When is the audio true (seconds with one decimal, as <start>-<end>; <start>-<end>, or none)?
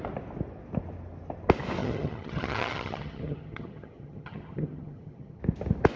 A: 0.0-1.8; 5.4-6.0